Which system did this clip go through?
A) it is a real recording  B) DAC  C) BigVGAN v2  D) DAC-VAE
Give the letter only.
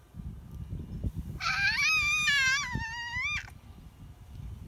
A